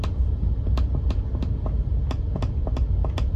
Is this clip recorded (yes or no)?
yes